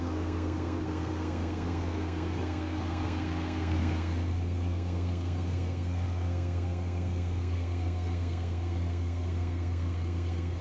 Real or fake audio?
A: fake